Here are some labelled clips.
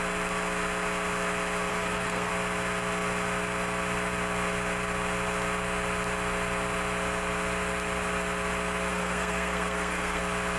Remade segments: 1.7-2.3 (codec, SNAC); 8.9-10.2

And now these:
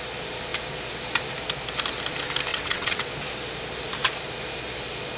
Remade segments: 2.5-3.1 (vocoder, WaveNeXt)

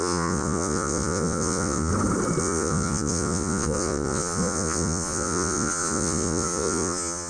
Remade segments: 0.0-1.9 (vocoder, Vocos); 2.4-7.3

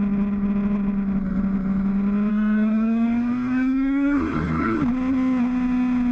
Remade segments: 2.3-4.8 (codec, SNAC)